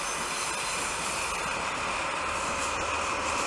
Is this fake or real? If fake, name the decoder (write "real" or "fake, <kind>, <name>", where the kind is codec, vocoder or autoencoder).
real